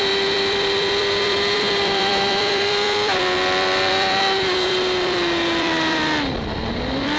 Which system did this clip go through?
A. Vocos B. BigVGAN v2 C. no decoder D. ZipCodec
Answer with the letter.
B